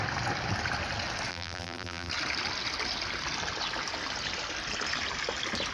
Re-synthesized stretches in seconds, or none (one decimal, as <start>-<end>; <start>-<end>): 1.3-2.1